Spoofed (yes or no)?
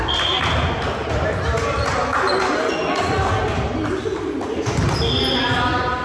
no